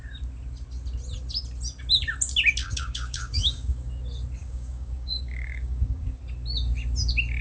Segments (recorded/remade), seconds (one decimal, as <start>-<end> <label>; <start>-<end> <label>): 0.0-2.6 recorded; 2.6-3.9 remade; 3.9-4.4 recorded; 4.4-6.2 remade; 6.2-7.4 recorded